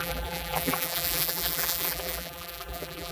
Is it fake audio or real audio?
fake